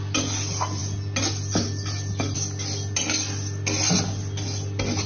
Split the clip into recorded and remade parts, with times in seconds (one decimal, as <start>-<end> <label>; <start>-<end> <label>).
0.0-5.1 recorded